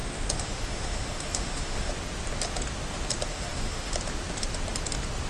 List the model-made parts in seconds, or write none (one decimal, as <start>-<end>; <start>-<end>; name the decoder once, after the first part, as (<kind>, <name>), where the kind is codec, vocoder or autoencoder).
0.0-1.9 (autoencoder, DAC-VAE); 3.3-3.9